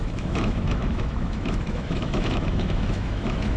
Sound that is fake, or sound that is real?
fake